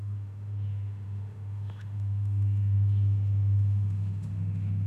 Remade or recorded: remade